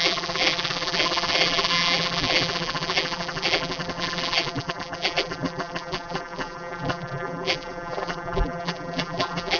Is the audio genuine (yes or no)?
no